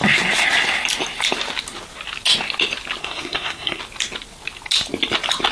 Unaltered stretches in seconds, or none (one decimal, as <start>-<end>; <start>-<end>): 0.0-3.0; 3.8-5.5